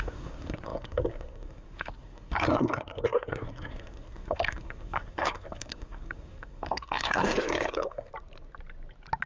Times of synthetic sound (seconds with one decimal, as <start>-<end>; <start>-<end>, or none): 0.0-8.1